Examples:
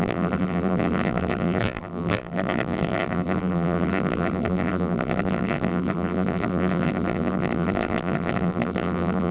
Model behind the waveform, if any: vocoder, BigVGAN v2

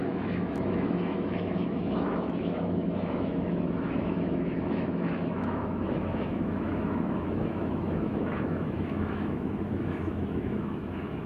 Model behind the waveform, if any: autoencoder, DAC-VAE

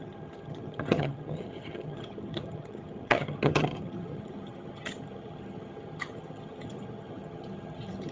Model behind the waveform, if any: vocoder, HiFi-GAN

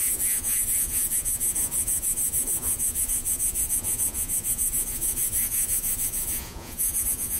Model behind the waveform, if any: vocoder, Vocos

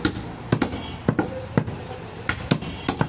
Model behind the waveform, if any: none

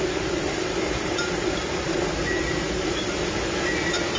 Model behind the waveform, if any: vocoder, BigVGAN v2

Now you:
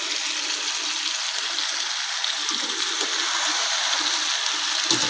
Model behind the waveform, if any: none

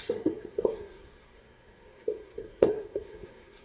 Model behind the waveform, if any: codec, SNAC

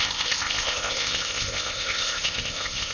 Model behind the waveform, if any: codec, ZipCodec